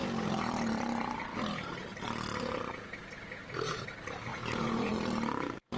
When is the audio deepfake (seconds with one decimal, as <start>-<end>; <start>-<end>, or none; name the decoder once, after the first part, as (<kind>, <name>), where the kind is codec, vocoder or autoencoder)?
none